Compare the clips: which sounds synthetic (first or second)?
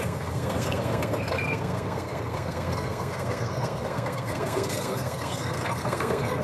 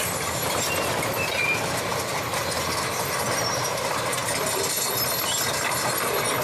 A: first